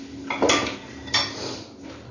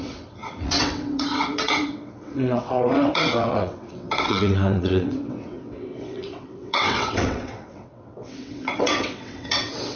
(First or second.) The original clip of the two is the first